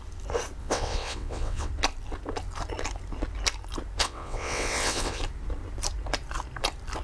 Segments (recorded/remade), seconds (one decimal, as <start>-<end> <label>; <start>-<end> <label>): 0.0-0.6 recorded; 0.6-1.7 remade; 1.7-4.0 recorded; 4.0-5.2 remade; 5.2-7.0 recorded